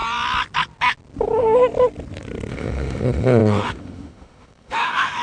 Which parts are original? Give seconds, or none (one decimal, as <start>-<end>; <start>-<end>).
0.0-2.5